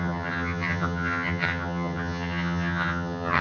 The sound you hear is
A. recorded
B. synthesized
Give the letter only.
B